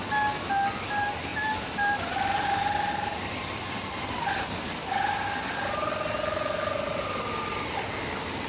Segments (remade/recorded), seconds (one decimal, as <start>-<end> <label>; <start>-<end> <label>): 0.0-8.5 recorded